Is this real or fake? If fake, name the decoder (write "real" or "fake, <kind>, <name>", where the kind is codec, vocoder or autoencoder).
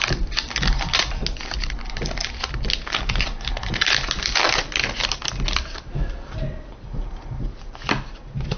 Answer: real